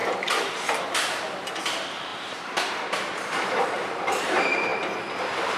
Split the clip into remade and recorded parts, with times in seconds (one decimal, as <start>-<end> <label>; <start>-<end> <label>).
0.0-1.5 recorded; 1.5-4.7 remade; 4.7-5.6 recorded